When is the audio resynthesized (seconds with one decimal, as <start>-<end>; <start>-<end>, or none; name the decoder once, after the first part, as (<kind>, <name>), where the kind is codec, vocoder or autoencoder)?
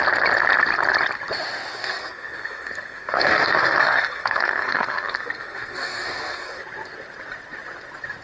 1.7-6.6 (codec, SNAC)